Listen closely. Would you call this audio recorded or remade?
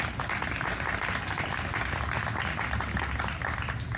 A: recorded